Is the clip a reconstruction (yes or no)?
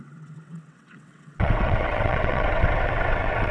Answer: yes